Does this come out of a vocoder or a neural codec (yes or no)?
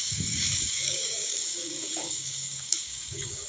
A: yes